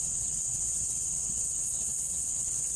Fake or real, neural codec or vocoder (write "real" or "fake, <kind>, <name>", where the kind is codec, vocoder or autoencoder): fake, vocoder, WaveNeXt